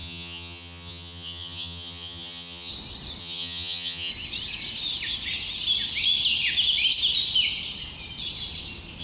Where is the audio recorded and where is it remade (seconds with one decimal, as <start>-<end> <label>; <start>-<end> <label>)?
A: 0.0-2.7 remade; 2.7-3.2 recorded; 3.2-4.1 remade; 4.1-9.0 recorded